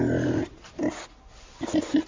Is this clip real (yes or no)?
yes